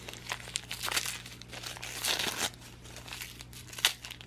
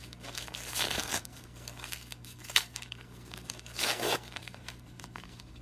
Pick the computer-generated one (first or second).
second